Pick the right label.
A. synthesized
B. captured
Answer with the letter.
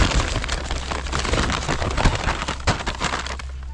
B